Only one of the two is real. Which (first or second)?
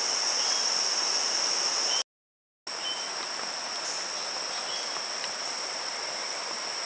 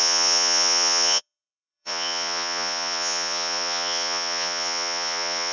first